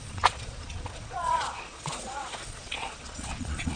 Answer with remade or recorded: remade